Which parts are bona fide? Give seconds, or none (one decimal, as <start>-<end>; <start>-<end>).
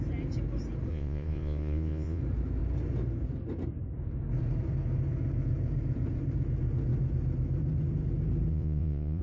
0.0-0.9; 2.2-8.5